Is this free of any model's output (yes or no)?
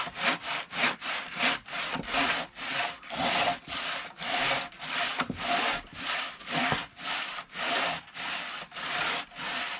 yes